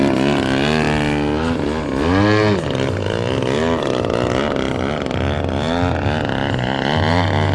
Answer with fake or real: real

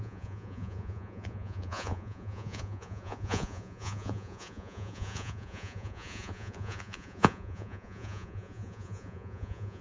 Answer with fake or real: fake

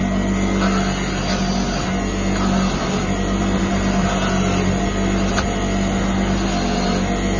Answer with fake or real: real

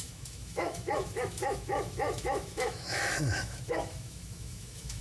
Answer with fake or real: fake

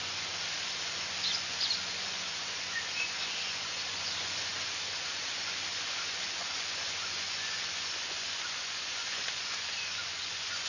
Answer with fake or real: fake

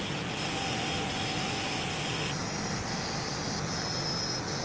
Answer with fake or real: real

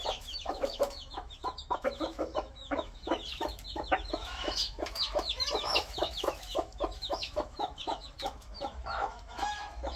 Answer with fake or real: fake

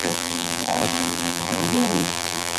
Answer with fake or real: fake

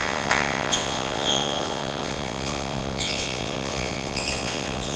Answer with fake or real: fake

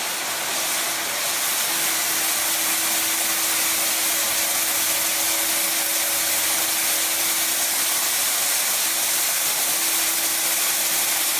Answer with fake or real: real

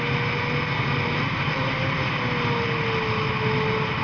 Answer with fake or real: real